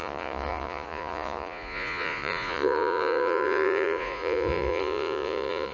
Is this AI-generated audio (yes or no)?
yes